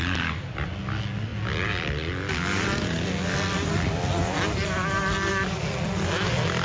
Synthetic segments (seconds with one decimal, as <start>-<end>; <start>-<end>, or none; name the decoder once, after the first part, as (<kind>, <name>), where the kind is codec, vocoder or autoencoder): none